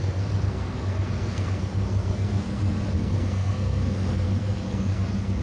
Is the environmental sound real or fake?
fake